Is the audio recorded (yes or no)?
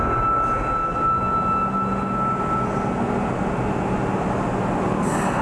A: yes